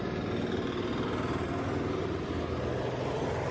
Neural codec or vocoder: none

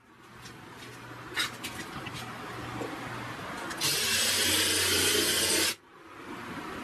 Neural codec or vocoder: none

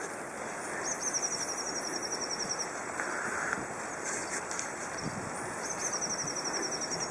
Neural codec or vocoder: none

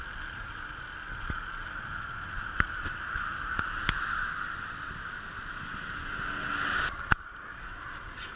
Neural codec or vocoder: none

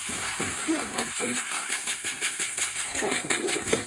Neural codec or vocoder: codec, SNAC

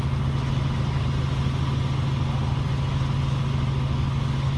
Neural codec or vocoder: none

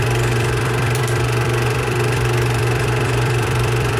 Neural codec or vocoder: vocoder, BigVGAN v2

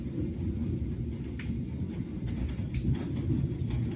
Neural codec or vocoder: none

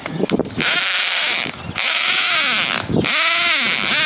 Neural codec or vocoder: none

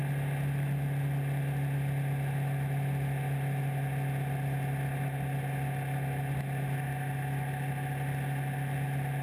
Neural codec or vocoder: none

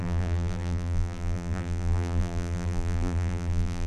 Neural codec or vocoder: vocoder, BigVGAN v2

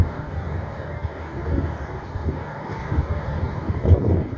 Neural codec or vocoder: codec, DAC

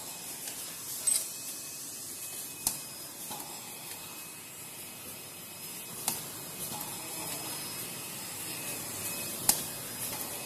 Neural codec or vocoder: none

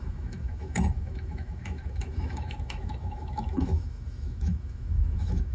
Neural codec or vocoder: autoencoder, DAC-VAE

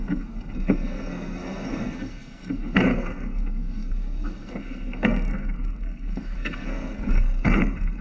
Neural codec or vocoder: codec, SNAC